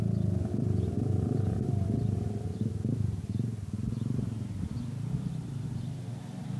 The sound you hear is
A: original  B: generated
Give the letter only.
A